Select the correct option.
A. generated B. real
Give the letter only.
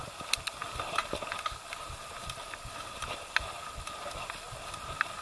B